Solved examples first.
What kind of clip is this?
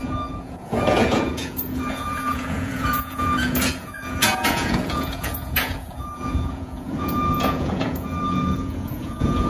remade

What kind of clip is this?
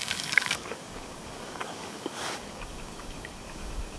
remade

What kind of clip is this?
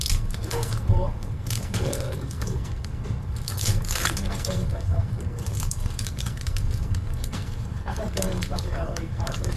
remade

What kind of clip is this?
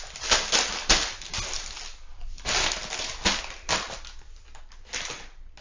recorded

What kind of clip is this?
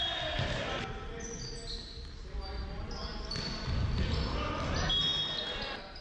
recorded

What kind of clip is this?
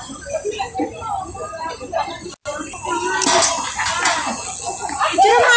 recorded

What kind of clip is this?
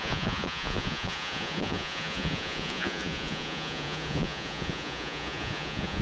remade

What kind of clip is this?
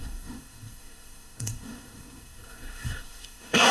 remade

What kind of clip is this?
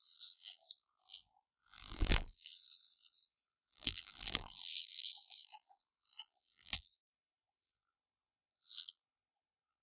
remade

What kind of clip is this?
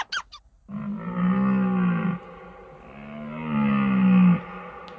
recorded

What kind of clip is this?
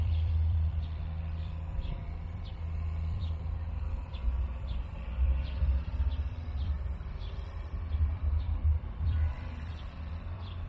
remade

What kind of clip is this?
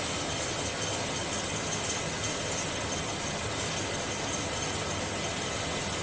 recorded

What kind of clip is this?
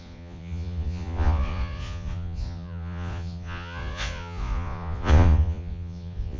remade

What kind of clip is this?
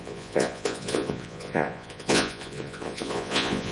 remade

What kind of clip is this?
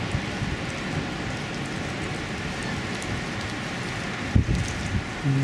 recorded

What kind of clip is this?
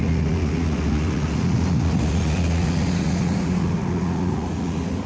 remade